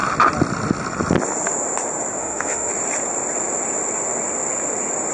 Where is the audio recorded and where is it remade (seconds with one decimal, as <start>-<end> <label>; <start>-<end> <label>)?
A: 0.0-2.2 recorded; 2.2-2.7 remade; 2.7-5.1 recorded